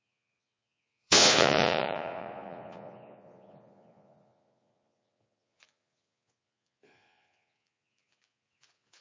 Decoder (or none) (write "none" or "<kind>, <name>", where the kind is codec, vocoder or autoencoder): vocoder, Vocos